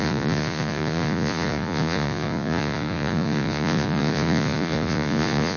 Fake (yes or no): yes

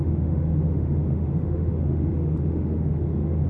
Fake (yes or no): yes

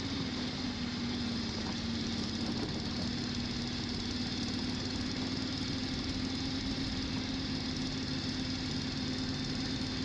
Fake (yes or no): no